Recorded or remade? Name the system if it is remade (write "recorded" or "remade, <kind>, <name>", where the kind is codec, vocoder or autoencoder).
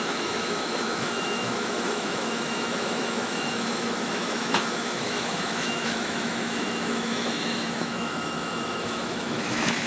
remade, autoencoder, DAC-VAE